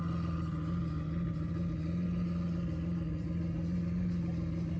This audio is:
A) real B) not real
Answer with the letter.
A